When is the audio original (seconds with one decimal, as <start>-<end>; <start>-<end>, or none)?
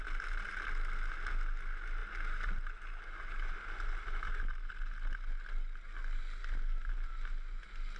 0.0-8.0